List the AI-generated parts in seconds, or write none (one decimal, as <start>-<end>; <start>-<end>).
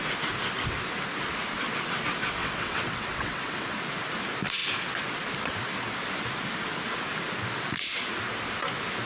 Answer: 2.4-3.8